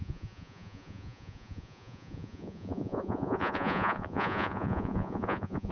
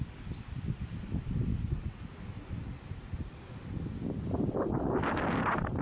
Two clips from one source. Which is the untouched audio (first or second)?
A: second